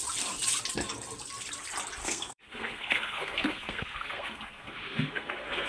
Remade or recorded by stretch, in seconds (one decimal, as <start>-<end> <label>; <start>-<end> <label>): 0.0-2.0 recorded; 2.0-5.7 remade

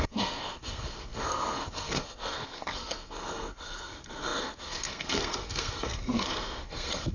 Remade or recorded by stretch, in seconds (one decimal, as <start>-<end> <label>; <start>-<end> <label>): 0.0-7.1 remade

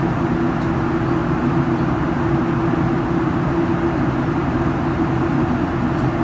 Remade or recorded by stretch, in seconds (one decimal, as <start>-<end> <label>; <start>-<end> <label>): 0.0-6.2 recorded

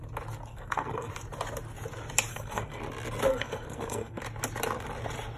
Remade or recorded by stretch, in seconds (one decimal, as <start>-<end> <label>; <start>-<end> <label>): 0.0-0.5 recorded; 0.5-1.1 remade; 1.1-2.3 recorded; 2.3-2.8 remade; 2.8-3.3 recorded; 3.3-4.2 remade; 4.2-5.4 recorded

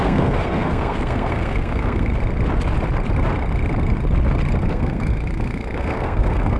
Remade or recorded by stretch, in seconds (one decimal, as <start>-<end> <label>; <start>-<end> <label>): 0.0-2.1 remade; 2.1-4.6 recorded; 4.6-6.6 remade

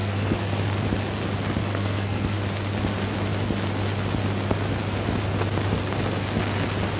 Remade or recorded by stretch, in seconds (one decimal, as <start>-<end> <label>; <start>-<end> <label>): 0.0-0.6 remade; 0.6-1.7 recorded; 1.7-2.4 remade; 2.4-7.0 recorded

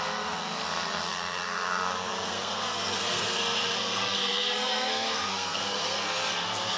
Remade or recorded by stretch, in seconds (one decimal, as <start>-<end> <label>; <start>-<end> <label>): 0.0-6.8 remade

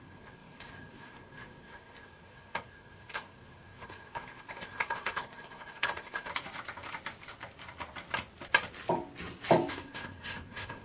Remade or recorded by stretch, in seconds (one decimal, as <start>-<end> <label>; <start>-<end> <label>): 0.0-6.3 remade; 6.3-9.7 recorded; 9.7-10.8 remade